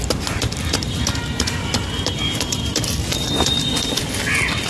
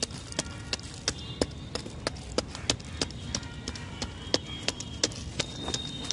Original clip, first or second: second